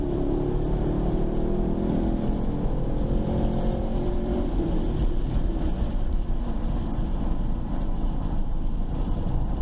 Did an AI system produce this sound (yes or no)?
yes